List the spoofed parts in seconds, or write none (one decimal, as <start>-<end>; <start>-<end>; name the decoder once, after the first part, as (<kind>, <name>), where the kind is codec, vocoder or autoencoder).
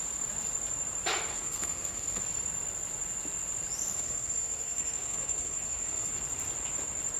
1.3-2.2 (codec, SNAC); 3.9-6.1